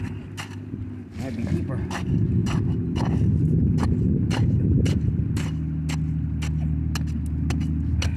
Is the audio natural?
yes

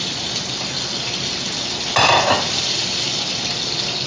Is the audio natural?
yes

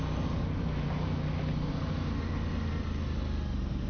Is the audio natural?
yes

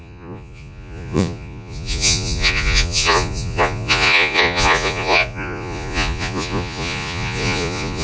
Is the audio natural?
no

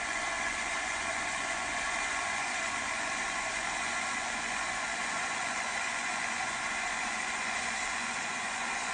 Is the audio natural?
no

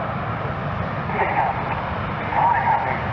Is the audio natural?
yes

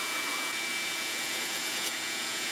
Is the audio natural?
no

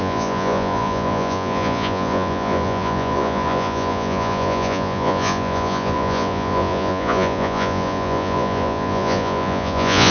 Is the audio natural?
no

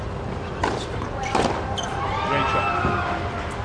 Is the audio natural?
yes